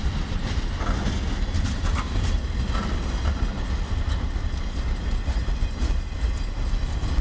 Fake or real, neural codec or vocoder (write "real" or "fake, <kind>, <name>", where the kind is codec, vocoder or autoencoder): real